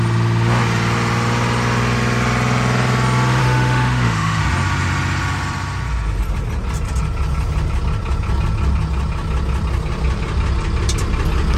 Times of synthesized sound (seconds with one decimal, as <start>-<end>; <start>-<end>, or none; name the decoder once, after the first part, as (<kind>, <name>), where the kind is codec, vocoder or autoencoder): 3.4-4.4 (autoencoder, DAC-VAE)